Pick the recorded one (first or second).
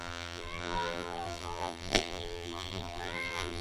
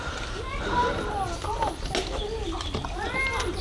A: second